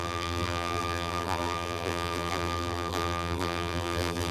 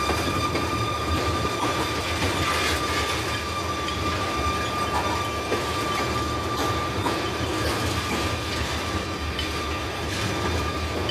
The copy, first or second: first